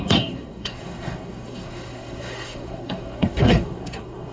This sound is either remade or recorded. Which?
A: remade